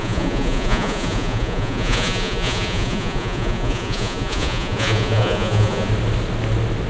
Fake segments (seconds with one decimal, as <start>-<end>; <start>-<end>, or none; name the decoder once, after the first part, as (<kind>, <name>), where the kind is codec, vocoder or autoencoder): 0.0-5.9 (vocoder, Vocos)